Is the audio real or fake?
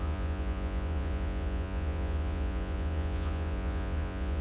fake